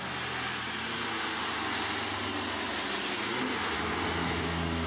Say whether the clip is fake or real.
real